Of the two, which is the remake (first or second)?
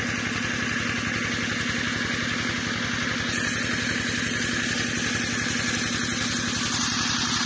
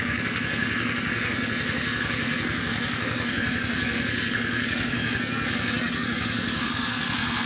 second